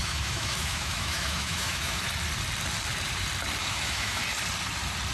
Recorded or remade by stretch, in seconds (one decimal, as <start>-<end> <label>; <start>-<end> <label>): 0.0-2.0 remade; 2.0-3.6 recorded; 3.6-4.2 remade; 4.2-5.1 recorded